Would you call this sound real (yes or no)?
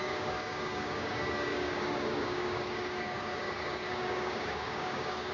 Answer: no